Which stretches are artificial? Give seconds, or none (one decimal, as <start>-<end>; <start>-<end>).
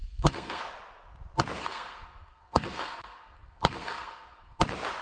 0.0-0.6; 1.6-4.6